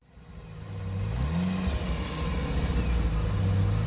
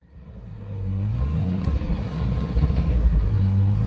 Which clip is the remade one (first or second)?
second